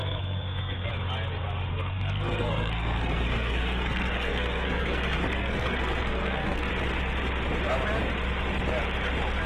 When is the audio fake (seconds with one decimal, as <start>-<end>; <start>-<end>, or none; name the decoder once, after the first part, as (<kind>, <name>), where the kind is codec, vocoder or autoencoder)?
0.0-0.9 (codec, SNAC); 1.7-6.7